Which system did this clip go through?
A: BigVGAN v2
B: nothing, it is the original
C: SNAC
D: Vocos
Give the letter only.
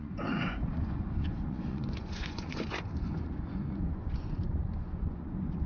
D